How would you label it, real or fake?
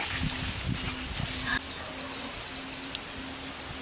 real